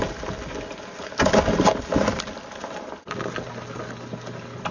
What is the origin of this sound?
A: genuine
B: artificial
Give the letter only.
A